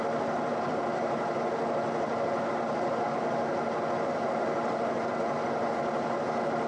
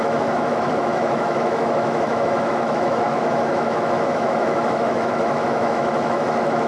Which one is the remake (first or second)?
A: second